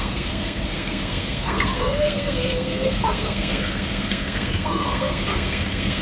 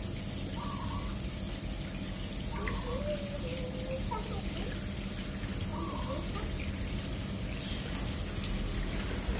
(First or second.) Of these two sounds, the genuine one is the second